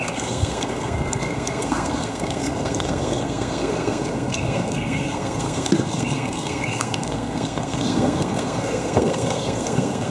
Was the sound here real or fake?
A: fake